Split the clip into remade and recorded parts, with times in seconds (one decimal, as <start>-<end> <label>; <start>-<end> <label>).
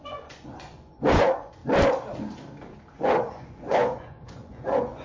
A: 0.0-1.6 remade; 1.6-2.9 recorded; 2.9-5.0 remade